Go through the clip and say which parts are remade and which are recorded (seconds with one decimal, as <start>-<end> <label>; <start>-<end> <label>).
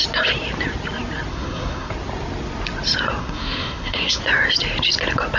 0.0-1.3 recorded; 1.3-1.9 remade; 1.9-3.2 recorded; 3.2-4.2 remade; 4.2-5.4 recorded